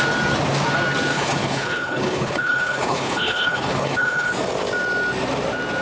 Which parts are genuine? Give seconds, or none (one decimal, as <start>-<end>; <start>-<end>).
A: 0.0-1.1; 4.3-5.8